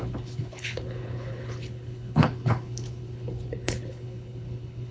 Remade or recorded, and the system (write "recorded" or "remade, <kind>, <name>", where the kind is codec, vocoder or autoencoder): remade, codec, HILCodec